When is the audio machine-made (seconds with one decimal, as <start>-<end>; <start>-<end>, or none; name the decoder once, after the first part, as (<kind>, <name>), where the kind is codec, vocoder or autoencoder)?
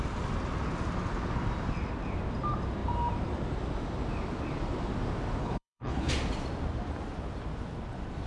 5.4-6.1 (codec, HILCodec)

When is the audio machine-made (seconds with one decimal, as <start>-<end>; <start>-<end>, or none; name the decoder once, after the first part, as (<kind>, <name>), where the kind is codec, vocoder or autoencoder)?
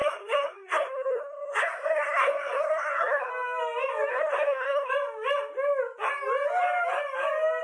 0.0-3.3 (codec, SNAC); 4.1-4.9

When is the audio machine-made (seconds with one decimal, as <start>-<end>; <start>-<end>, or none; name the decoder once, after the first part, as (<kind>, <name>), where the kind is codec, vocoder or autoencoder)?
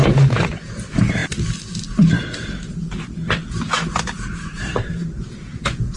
4.6-5.4 (vocoder, BigVGAN v2)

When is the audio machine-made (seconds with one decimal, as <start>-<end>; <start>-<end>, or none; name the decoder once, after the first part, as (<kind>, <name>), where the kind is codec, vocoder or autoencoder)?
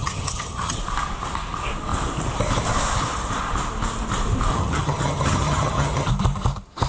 0.0-0.8 (vocoder, HiFi-GAN); 4.5-6.1